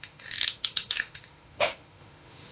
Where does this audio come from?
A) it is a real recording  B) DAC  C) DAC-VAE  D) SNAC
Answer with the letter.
C